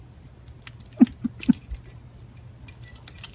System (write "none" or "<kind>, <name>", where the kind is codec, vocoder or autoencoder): none